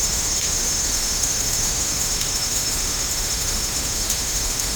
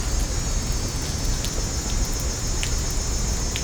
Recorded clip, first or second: second